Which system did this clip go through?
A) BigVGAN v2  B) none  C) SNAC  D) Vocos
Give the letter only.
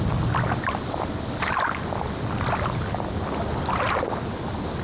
B